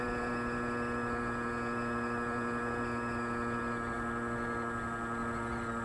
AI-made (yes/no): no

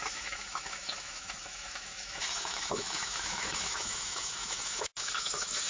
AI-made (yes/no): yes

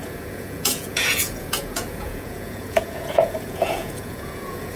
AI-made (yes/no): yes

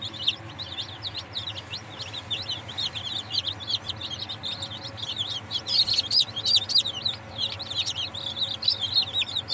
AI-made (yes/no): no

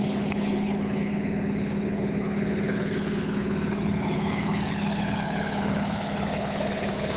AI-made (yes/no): yes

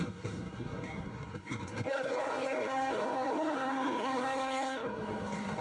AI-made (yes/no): yes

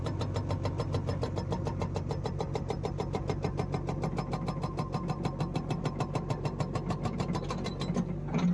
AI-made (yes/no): no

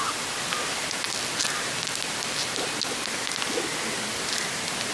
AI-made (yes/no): no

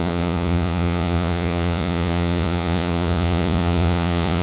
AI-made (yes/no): yes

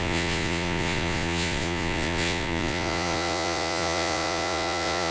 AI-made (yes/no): yes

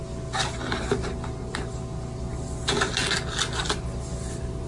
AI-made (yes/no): no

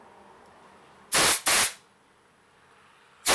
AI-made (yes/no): no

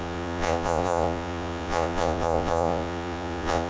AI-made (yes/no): yes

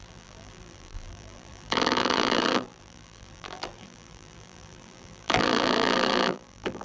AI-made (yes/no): yes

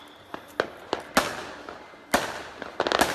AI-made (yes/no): no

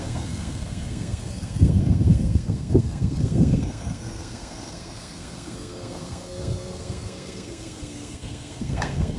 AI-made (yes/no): yes